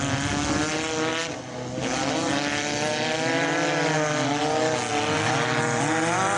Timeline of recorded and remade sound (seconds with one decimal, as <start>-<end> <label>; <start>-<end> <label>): 0.0-6.4 recorded